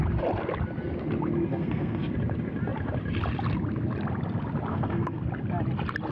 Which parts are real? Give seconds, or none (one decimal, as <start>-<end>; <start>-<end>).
0.0-1.5; 2.1-4.7; 5.2-6.1